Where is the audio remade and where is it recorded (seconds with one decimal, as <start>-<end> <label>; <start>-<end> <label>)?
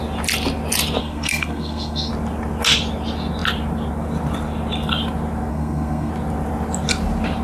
0.0-1.0 recorded; 1.0-2.1 remade; 2.1-5.5 recorded; 5.5-6.1 remade; 6.1-7.4 recorded